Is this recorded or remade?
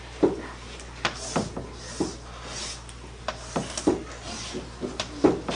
recorded